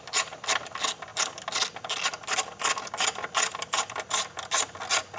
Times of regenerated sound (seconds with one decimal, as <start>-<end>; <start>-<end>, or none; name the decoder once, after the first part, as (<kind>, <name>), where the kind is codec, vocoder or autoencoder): none